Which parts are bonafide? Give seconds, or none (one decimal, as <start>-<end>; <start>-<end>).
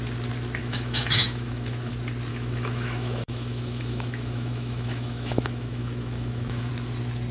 0.0-0.6; 1.9-2.3; 6.7-7.3